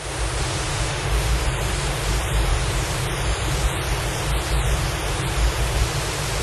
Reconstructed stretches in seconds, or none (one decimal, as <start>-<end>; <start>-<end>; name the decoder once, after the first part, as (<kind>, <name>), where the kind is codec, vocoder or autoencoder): 0.7-1.4 (autoencoder, DAC-VAE)